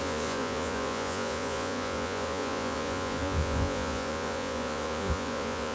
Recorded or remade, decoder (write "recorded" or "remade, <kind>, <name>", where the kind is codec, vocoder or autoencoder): remade, vocoder, Vocos